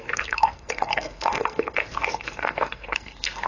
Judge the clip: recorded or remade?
remade